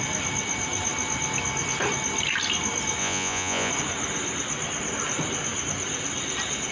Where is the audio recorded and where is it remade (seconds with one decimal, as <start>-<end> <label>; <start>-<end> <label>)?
0.0-3.0 recorded; 3.0-3.7 remade; 3.7-6.7 recorded